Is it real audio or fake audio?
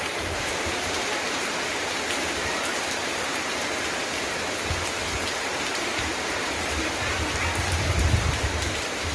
fake